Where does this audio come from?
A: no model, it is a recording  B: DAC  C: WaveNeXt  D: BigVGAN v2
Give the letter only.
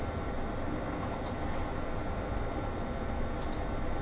A